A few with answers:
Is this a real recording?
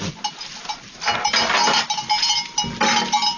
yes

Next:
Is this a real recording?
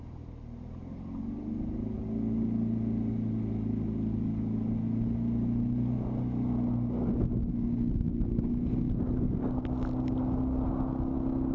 yes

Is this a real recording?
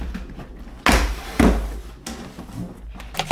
yes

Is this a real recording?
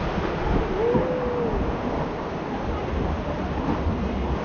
yes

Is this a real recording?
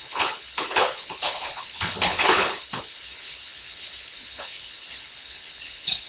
no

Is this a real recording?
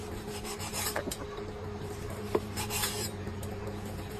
no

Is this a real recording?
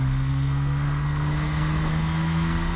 no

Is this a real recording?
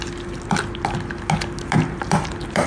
yes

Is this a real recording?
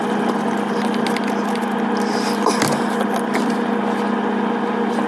yes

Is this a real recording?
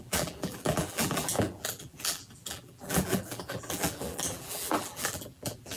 no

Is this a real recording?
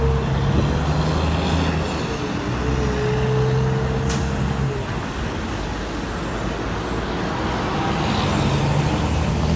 yes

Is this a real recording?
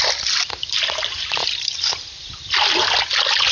yes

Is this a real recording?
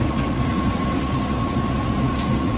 no